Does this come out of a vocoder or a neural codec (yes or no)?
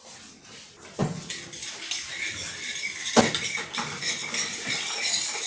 no